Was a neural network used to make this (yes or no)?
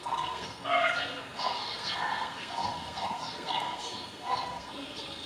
yes